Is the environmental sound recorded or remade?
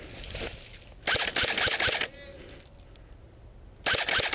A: recorded